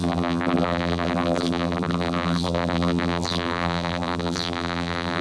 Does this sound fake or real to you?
fake